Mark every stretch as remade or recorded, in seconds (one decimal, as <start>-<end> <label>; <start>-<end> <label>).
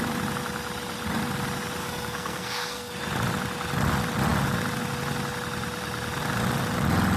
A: 0.0-1.8 recorded; 1.8-2.9 remade; 2.9-7.2 recorded